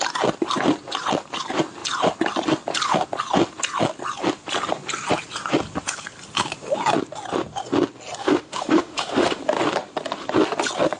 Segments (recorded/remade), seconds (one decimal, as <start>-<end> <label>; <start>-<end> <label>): 0.0-8.2 recorded; 8.2-9.4 remade; 9.4-11.0 recorded